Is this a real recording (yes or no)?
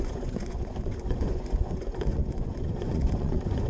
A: no